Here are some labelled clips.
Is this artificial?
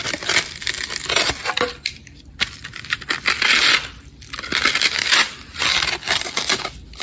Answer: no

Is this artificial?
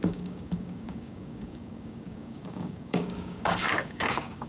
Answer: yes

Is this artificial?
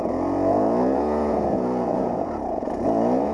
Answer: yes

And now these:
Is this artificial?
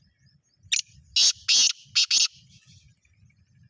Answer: no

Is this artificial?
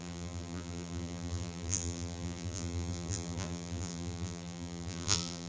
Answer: yes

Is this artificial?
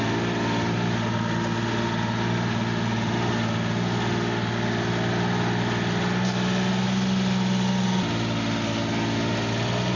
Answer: no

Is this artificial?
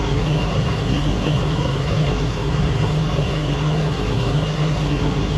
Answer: yes